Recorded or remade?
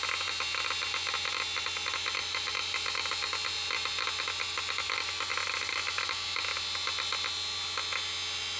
recorded